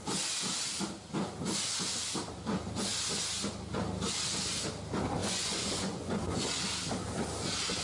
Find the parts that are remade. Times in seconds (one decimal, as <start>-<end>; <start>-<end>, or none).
5.2-6.6